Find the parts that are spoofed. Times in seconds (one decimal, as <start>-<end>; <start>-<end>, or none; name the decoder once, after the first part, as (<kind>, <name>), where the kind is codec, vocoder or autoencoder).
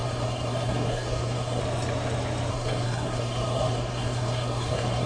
0.0-1.6 (codec, SNAC); 2.5-5.1